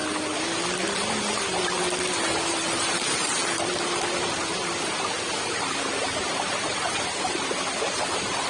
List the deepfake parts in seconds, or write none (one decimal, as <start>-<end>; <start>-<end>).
1.3-1.8; 2.5-3.4; 6.5-8.5